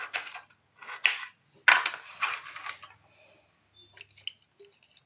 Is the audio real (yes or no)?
yes